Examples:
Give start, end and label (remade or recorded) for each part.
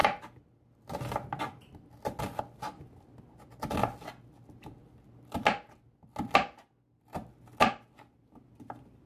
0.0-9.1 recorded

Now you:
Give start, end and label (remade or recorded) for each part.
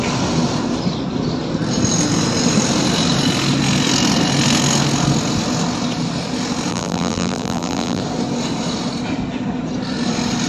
0.0-6.7 recorded; 6.7-8.0 remade; 8.0-10.5 recorded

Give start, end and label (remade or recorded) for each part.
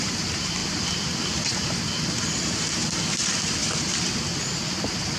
0.0-0.6 recorded; 0.6-1.8 remade; 1.8-3.6 recorded; 3.6-4.1 remade; 4.1-5.2 recorded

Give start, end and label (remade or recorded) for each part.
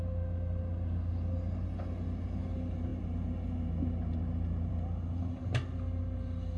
0.0-6.6 recorded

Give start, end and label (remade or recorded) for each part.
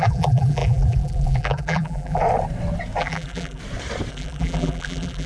0.0-2.2 remade; 2.2-3.0 recorded; 3.0-3.6 remade; 3.6-4.1 recorded; 4.1-5.3 remade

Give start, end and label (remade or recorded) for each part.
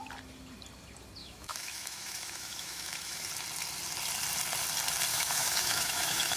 0.0-1.2 recorded; 1.2-3.3 remade; 3.3-5.1 recorded; 5.1-6.4 remade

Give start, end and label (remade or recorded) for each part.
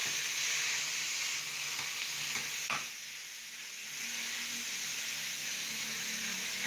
0.0-5.4 recorded; 5.4-6.7 remade